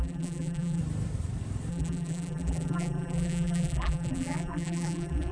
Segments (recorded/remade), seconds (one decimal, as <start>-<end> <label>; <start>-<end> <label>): 0.0-0.8 remade; 0.8-1.7 recorded; 1.7-5.3 remade